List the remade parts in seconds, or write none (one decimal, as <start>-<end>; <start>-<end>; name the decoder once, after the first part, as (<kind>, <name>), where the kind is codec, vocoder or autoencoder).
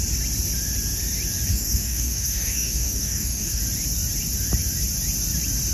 1.5-3.6 (codec, DAC)